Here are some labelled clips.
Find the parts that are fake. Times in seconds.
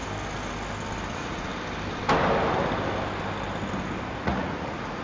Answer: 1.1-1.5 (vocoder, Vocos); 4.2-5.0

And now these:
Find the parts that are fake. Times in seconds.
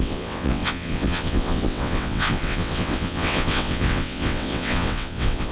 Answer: 0.0-5.5 (vocoder, WaveNeXt)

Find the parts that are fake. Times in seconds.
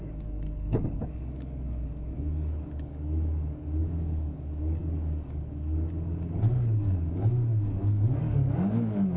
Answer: 0.0-9.2 (codec, DAC)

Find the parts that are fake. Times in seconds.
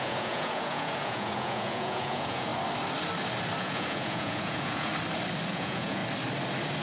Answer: 0.0-2.5 (vocoder, Vocos); 3.6-4.9; 5.5-6.0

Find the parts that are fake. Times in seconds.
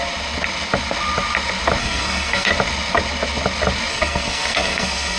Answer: 1.8-2.5 (codec, SNAC); 3.9-5.2